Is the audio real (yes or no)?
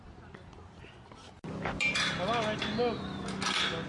yes